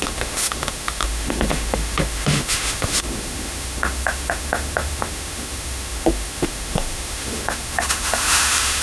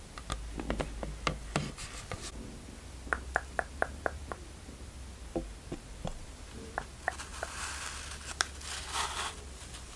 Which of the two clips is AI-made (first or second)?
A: first